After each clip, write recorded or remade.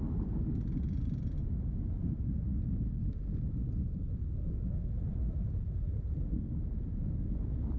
recorded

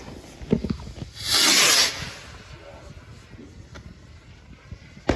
recorded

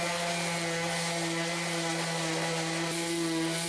recorded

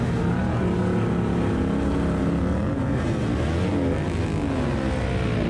recorded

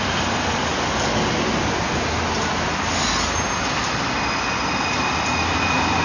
recorded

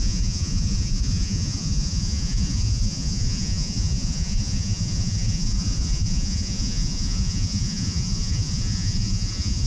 remade